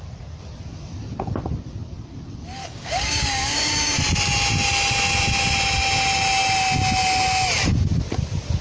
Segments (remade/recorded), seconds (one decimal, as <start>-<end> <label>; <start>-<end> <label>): 0.0-2.6 recorded; 2.6-4.0 remade; 4.0-8.6 recorded

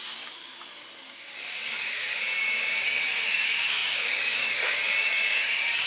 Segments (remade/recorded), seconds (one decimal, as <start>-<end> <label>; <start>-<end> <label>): 0.0-0.5 remade; 0.5-1.0 recorded; 1.0-5.9 remade

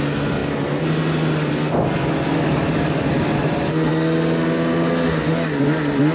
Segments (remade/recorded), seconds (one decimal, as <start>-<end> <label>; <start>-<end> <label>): 0.0-6.1 recorded